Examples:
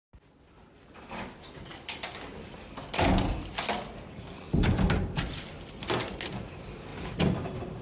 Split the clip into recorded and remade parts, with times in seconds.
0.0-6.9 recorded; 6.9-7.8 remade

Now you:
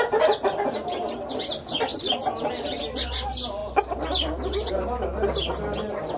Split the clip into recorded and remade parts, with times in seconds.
0.0-6.2 recorded

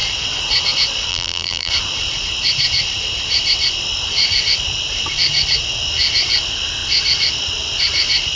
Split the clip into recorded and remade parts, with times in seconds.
0.0-1.1 recorded; 1.1-1.7 remade; 1.7-8.4 recorded

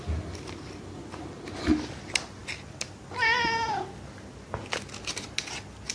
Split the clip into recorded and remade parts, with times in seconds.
0.0-5.9 recorded

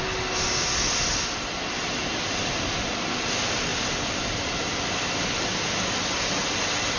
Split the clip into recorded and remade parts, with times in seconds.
0.0-3.7 recorded; 3.7-5.0 remade; 5.0-7.0 recorded

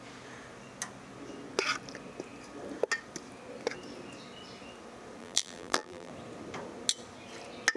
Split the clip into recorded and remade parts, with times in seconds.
0.0-5.2 recorded; 5.2-6.1 remade; 6.1-7.8 recorded

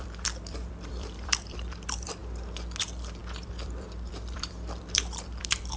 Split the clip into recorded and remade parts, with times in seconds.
0.0-2.2 remade; 2.2-2.8 recorded; 2.8-5.8 remade